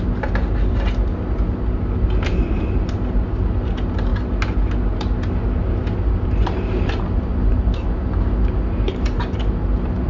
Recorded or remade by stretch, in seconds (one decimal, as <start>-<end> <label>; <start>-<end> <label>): 0.0-10.1 recorded